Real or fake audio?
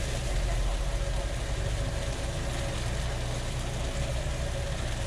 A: real